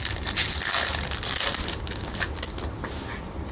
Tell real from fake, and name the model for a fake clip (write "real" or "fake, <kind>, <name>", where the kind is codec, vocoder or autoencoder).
real